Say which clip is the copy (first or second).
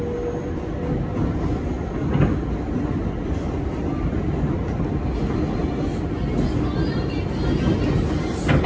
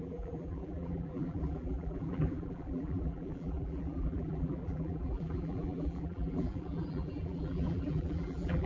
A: second